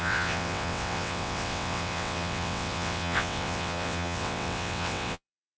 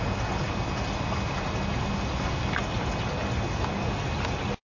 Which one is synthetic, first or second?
first